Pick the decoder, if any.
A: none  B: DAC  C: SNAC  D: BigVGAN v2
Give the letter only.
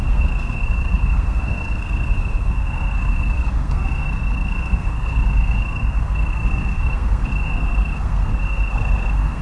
C